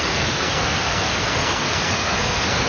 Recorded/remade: remade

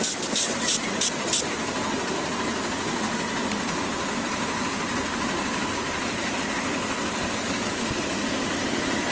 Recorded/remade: recorded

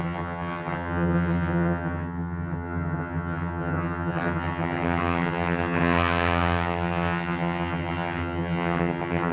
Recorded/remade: remade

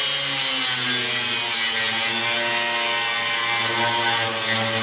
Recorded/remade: recorded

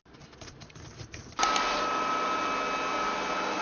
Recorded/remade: recorded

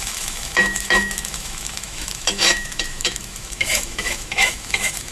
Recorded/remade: remade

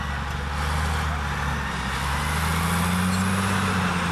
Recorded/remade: recorded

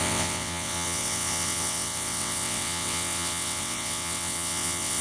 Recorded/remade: remade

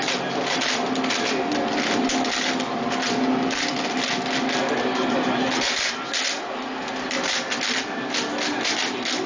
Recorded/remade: recorded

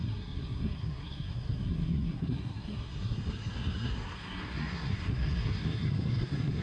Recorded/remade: remade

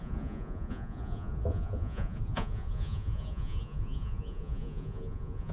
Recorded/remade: remade